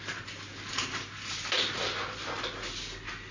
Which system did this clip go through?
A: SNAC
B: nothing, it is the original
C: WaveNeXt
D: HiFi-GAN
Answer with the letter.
B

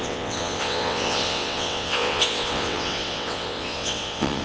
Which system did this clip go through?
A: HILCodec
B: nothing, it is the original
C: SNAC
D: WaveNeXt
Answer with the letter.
D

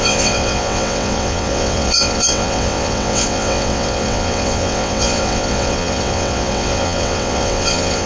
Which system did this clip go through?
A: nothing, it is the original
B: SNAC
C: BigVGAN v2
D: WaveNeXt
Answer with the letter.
D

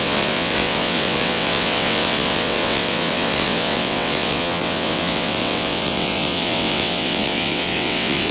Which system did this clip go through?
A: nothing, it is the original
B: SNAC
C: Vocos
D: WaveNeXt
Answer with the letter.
D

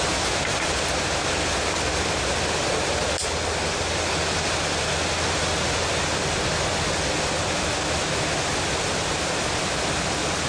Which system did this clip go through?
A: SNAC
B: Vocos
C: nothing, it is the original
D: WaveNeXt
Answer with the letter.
C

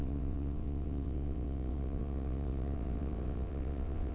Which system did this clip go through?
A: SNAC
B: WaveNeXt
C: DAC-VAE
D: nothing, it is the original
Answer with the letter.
B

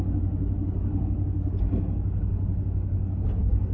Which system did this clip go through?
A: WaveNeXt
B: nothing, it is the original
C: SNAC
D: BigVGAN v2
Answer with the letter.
B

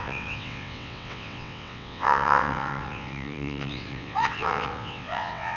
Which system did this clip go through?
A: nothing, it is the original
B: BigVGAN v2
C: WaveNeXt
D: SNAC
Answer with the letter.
C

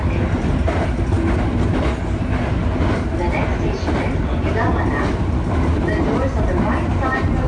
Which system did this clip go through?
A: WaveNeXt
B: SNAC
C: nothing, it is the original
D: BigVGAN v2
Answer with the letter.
C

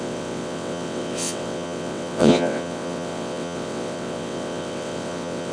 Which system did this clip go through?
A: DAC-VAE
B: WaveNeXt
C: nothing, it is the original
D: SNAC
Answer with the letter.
B